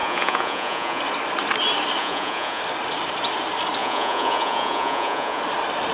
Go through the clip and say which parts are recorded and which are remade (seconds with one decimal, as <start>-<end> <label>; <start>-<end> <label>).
0.0-1.0 remade; 1.0-2.0 recorded; 2.0-2.6 remade; 2.6-3.8 recorded; 3.8-5.4 remade; 5.4-5.9 recorded